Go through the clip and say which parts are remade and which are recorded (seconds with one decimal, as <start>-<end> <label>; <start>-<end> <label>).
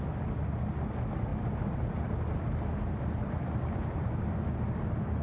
0.0-1.3 recorded; 1.3-4.4 remade; 4.4-5.2 recorded